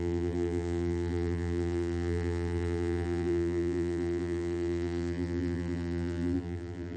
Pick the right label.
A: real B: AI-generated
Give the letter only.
B